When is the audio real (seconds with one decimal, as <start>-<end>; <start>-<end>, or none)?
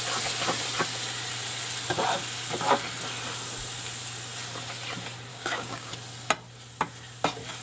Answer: 0.0-5.3; 5.9-7.6